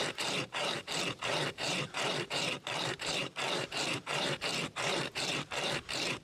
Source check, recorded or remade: remade